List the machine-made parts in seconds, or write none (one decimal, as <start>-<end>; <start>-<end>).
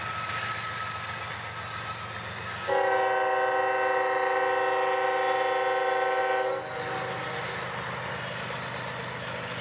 none